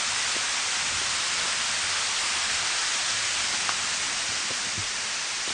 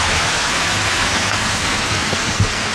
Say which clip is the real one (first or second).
first